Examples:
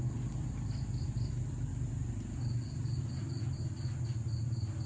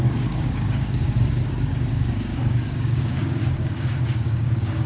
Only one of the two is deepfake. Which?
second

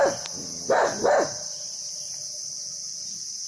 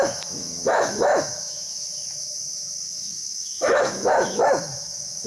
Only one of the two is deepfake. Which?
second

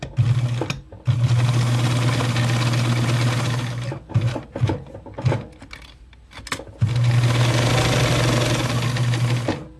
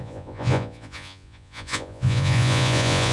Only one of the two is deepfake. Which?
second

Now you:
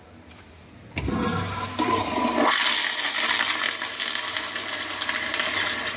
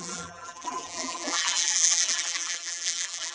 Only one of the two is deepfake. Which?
second